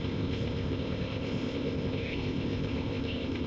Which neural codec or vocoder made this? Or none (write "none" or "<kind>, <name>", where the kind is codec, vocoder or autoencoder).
codec, ZipCodec